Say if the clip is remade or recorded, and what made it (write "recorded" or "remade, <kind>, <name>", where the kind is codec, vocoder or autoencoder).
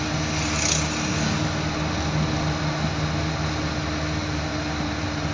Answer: recorded